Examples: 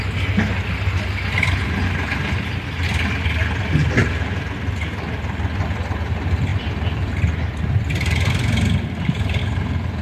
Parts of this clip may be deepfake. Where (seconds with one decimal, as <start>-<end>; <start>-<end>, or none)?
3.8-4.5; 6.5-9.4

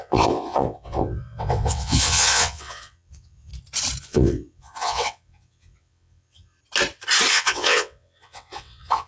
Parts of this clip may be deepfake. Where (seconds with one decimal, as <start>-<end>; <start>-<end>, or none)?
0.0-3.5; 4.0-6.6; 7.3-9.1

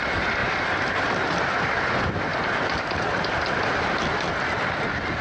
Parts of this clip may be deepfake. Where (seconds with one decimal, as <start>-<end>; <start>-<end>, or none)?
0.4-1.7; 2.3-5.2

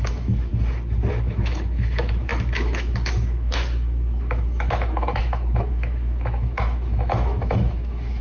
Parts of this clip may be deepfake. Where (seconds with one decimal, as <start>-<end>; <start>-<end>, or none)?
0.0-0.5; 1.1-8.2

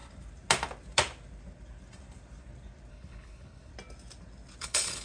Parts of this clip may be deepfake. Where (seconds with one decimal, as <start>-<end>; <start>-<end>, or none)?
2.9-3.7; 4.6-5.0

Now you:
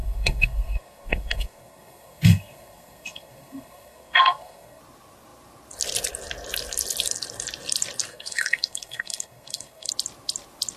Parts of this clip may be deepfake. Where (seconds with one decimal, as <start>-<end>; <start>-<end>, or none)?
0.0-4.8; 8.1-9.9